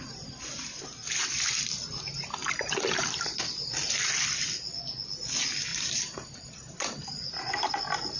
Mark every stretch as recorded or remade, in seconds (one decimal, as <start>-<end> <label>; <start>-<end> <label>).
0.0-0.6 recorded; 0.6-1.5 remade; 1.5-2.4 recorded; 2.4-3.4 remade; 3.4-5.7 recorded; 5.7-7.7 remade; 7.7-8.2 recorded

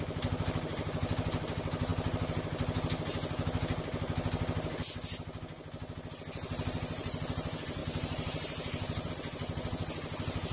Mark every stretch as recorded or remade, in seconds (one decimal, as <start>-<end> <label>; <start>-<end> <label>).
0.0-7.8 recorded; 7.8-9.1 remade; 9.1-10.5 recorded

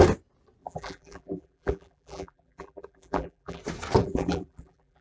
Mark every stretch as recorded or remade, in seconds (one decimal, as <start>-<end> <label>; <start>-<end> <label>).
0.0-0.6 recorded; 0.6-3.6 remade; 3.6-4.0 recorded; 4.0-5.0 remade

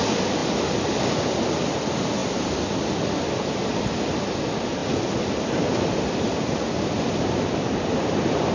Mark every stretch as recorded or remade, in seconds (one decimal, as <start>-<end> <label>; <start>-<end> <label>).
0.0-2.2 recorded; 2.2-3.8 remade; 3.8-4.8 recorded; 4.8-8.5 remade